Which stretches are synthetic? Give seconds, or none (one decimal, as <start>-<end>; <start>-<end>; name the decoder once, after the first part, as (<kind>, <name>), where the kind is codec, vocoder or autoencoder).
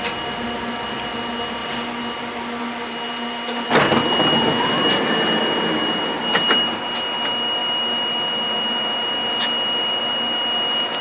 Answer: none